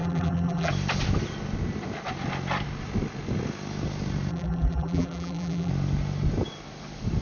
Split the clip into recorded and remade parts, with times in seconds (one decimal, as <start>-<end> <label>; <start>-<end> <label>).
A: 0.0-0.7 remade; 0.7-4.3 recorded; 4.3-5.7 remade; 5.7-7.2 recorded